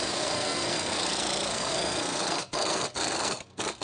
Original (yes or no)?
no